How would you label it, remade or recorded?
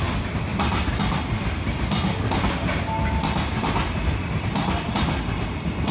recorded